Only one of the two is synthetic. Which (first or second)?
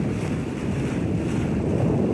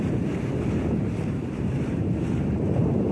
second